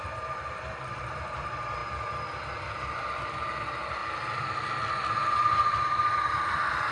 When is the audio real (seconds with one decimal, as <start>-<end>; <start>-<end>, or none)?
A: 4.0-5.2